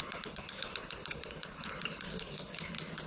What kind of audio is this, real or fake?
fake